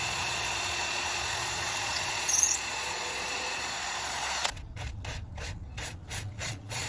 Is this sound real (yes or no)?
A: no